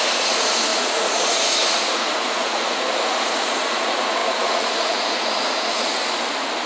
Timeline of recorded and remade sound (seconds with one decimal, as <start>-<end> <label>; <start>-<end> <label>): 0.0-6.0 remade; 6.0-6.7 recorded